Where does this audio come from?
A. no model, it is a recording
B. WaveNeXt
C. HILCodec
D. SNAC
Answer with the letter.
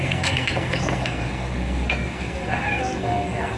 D